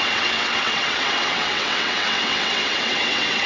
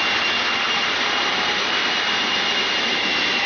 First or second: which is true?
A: second